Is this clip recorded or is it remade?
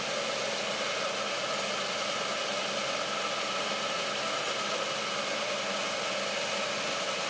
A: recorded